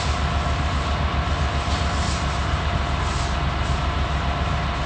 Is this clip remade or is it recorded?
recorded